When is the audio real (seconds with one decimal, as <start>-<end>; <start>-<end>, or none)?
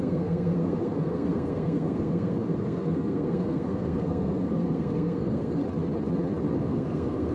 5.6-6.6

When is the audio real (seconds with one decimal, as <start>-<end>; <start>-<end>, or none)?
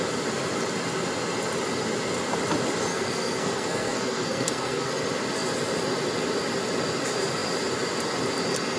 0.0-2.9; 4.9-8.8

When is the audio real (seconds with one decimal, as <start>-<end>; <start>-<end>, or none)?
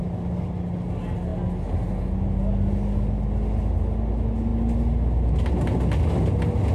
0.0-6.7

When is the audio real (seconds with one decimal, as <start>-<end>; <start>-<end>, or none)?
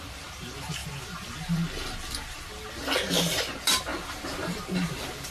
0.0-5.3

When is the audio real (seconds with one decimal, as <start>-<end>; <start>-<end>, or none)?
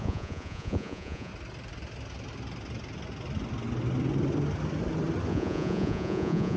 1.3-5.3